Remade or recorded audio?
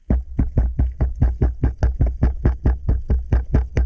recorded